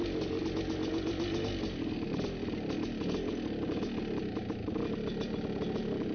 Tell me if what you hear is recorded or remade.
recorded